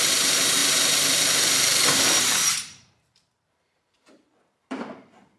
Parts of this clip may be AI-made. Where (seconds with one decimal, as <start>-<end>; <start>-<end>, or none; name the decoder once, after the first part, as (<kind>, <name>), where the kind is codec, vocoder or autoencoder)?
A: 0.0-5.4 (vocoder, BigVGAN v2)